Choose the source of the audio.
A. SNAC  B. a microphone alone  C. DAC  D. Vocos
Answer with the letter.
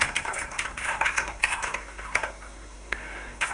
A